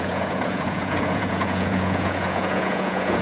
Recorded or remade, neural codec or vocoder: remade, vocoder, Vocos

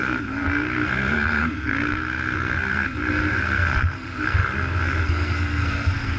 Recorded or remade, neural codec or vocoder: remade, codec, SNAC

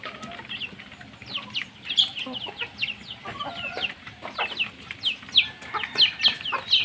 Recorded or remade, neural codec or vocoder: recorded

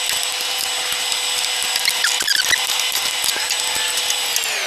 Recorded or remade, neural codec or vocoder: recorded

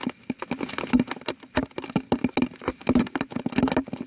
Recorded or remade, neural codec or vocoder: recorded